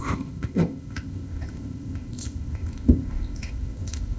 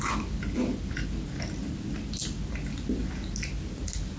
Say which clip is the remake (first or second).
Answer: first